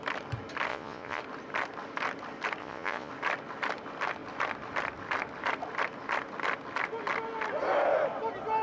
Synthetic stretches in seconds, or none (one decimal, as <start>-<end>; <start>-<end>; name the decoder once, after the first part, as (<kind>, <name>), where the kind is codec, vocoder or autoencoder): 0.7-1.2 (vocoder, Vocos); 2.6-3.1